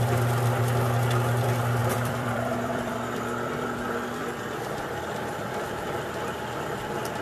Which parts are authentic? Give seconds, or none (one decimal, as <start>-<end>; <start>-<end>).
0.0-1.8; 5.9-7.2